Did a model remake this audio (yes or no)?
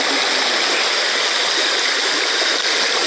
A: no